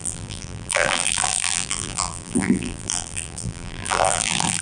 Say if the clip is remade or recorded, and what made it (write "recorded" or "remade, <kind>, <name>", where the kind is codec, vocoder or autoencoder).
remade, vocoder, BigVGAN v2